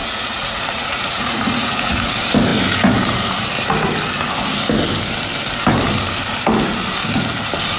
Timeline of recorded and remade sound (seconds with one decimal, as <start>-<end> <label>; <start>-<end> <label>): 0.0-2.1 remade; 2.1-7.8 recorded

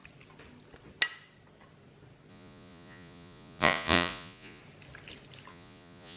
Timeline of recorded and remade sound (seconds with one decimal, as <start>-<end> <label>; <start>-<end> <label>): 0.0-2.3 recorded; 2.3-4.6 remade; 4.6-5.5 recorded; 5.5-6.2 remade

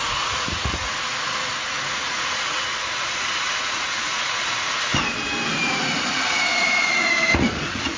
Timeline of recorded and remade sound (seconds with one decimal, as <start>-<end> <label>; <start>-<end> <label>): 0.0-4.9 remade; 4.9-5.5 recorded; 5.5-8.0 remade